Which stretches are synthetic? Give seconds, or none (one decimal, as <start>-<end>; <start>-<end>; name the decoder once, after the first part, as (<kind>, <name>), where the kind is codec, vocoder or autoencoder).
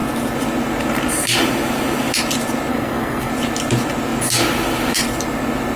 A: 2.7-3.3 (codec, SNAC)